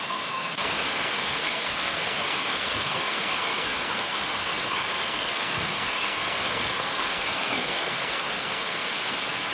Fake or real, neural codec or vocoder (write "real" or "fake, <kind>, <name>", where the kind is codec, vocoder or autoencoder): fake, codec, SNAC